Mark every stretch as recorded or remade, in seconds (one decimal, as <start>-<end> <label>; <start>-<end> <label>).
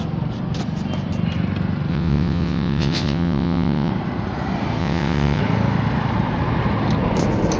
0.0-1.9 recorded; 1.9-3.9 remade; 3.9-4.8 recorded; 4.8-5.4 remade; 5.4-7.6 recorded